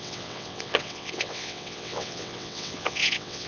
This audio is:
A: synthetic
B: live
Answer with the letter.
A